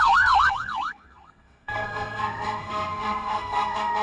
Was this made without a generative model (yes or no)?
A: no